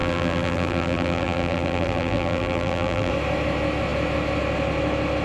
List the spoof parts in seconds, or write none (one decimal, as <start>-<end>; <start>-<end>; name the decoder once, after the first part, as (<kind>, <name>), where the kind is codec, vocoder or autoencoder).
0.0-3.1 (vocoder, BigVGAN v2)